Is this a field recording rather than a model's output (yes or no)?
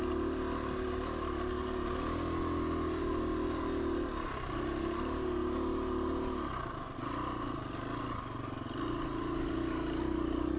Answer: yes